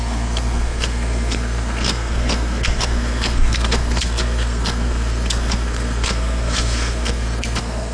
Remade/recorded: remade